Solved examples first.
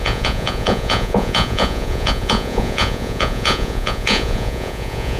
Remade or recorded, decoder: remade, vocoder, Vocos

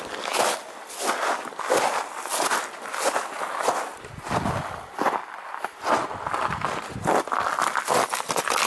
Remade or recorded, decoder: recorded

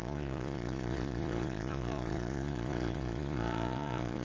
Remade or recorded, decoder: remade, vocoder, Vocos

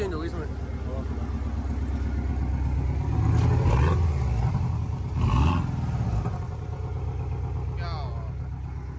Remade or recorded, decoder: recorded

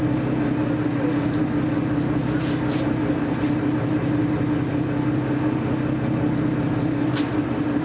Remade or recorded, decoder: recorded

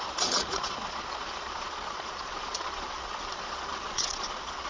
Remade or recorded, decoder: remade, vocoder, Vocos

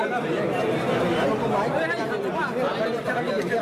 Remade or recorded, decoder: recorded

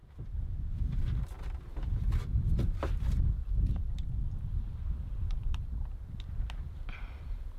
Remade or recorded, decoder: recorded